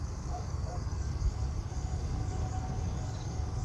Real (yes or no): no